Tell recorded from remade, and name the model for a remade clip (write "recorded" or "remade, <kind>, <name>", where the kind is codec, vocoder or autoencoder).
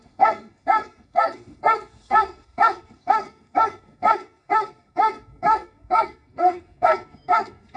remade, codec, SNAC